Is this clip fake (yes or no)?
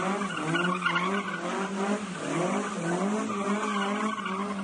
no